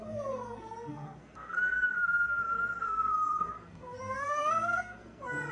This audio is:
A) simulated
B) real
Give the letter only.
A